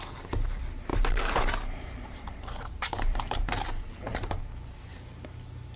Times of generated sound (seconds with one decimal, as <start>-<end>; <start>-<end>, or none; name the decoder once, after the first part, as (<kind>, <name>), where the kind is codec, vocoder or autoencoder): 0.9-4.4 (vocoder, BigVGAN v2)